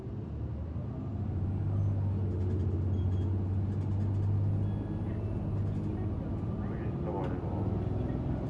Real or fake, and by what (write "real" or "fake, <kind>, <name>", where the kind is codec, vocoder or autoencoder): real